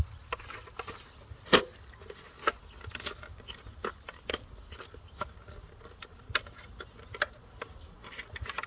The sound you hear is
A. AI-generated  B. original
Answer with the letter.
B